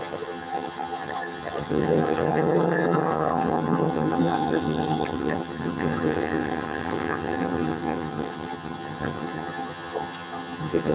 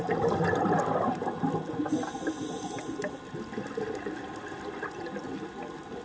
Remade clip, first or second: first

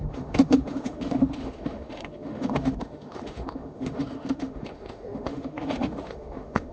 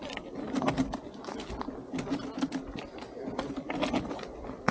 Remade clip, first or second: first